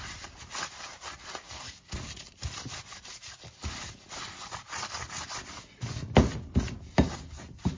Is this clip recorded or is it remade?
recorded